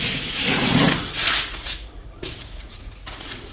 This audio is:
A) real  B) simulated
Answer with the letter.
B